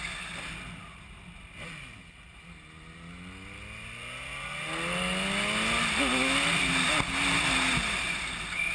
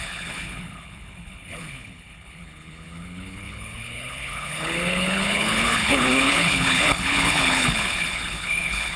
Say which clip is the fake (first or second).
second